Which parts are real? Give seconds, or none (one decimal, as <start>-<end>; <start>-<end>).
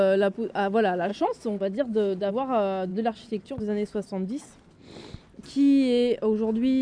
0.0-1.1; 2.3-2.9; 3.6-6.8